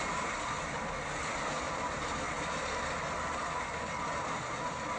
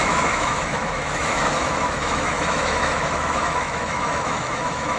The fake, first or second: second